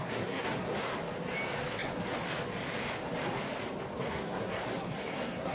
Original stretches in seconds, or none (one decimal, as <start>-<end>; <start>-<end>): 0.9-4.0